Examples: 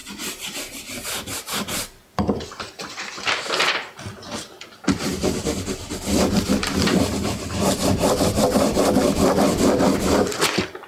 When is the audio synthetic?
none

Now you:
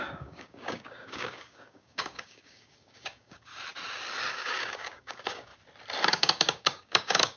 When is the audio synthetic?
0.0-3.5 (codec, DAC); 4.3-5.5; 6.0-7.4